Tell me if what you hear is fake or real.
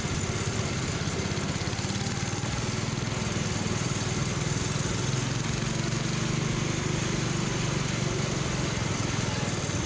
real